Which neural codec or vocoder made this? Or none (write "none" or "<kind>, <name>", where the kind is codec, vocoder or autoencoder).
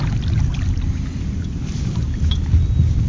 none